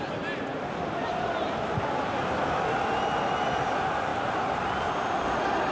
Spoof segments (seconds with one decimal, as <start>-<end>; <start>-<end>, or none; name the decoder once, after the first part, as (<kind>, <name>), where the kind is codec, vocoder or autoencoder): 4.1-4.8 (vocoder, BigVGAN v2)